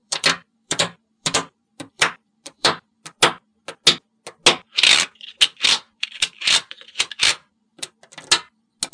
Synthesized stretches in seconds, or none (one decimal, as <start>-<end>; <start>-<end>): 0.0-3.0; 5.5-7.9